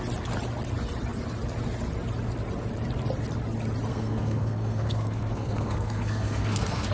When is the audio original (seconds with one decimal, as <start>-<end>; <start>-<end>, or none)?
0.0-3.9